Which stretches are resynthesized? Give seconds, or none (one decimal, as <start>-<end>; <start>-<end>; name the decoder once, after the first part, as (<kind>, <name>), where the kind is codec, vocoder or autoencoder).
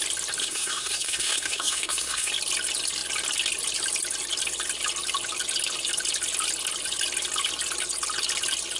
0.4-2.3 (codec, SNAC)